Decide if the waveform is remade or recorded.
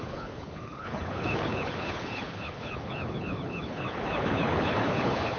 remade